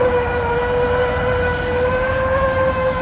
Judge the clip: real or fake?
real